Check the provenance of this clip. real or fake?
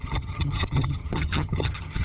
fake